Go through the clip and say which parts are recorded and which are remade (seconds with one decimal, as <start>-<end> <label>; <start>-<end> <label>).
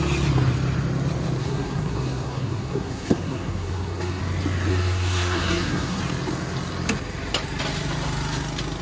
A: 0.0-1.4 recorded; 1.4-4.2 remade; 4.2-4.7 recorded; 4.7-6.0 remade; 6.0-8.8 recorded